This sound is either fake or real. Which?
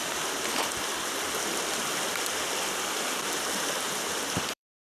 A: fake